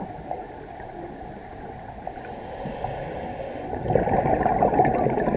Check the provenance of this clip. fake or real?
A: real